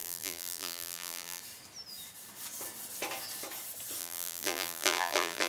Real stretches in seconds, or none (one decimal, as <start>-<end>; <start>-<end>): 1.4-4.0